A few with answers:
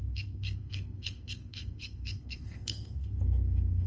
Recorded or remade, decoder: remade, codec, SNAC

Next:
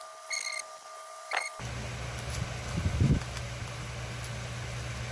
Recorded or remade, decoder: recorded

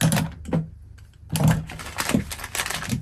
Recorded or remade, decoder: recorded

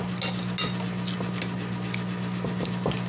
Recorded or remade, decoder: recorded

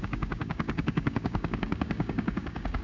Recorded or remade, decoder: remade, codec, DAC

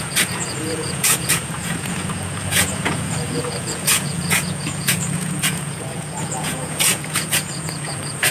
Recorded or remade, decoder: remade, vocoder, Vocos